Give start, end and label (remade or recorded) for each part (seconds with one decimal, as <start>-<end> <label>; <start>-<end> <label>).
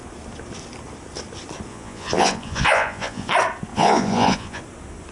0.0-1.7 recorded; 1.7-3.3 remade; 3.3-3.7 recorded; 3.7-4.6 remade; 4.6-5.1 recorded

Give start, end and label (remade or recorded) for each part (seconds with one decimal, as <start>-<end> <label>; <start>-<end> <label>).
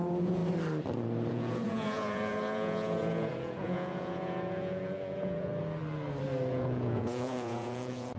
0.0-0.4 remade; 0.4-1.3 recorded; 1.3-5.5 remade; 5.5-6.5 recorded; 6.5-8.2 remade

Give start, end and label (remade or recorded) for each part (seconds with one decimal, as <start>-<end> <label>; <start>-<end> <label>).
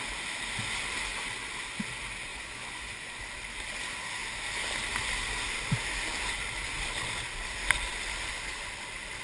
0.0-2.3 recorded; 2.3-3.2 remade; 3.2-9.2 recorded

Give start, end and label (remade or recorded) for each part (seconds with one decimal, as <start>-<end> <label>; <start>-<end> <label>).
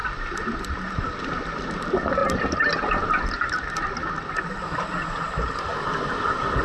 0.0-6.6 recorded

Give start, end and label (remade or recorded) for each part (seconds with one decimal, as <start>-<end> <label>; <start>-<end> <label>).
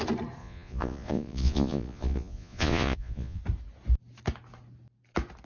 0.0-0.4 recorded; 0.4-3.4 remade; 3.4-5.4 recorded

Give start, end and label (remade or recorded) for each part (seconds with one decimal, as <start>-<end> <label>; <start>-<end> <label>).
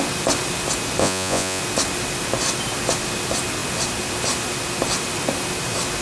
0.0-1.0 recorded; 1.0-1.6 remade; 1.6-6.0 recorded